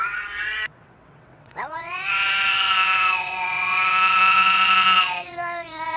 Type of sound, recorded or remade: remade